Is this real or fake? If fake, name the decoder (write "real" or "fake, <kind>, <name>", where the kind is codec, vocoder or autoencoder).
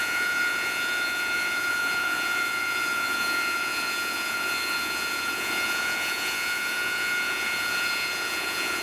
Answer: fake, vocoder, Vocos